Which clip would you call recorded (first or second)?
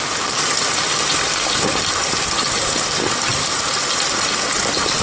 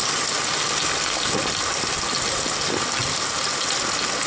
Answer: second